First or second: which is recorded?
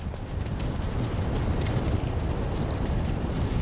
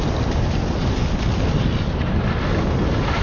second